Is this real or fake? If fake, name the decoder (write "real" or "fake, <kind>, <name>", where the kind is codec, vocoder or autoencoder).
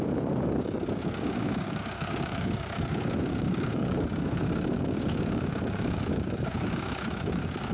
fake, codec, DAC